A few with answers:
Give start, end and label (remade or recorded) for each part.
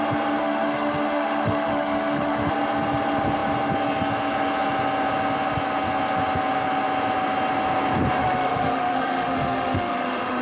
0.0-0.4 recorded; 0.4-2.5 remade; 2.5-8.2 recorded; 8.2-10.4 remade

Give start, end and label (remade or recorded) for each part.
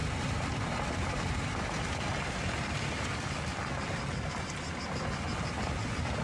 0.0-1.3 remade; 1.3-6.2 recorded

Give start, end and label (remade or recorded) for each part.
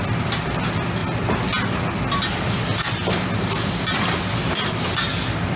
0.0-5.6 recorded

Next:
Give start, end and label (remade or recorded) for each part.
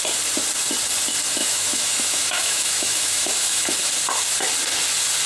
0.0-1.4 recorded; 1.4-3.9 remade; 3.9-5.3 recorded